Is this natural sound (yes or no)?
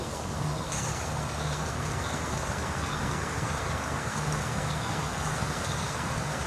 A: no